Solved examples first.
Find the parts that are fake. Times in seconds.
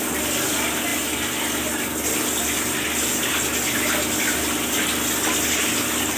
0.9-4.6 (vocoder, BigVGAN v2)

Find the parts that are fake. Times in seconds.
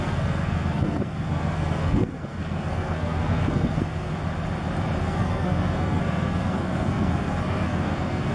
0.0-4.1 (codec, SNAC); 5.0-8.3